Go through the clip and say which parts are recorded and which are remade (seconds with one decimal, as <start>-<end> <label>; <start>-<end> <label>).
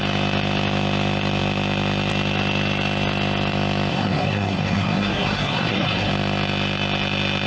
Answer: 0.0-3.9 recorded; 3.9-6.1 remade; 6.1-7.5 recorded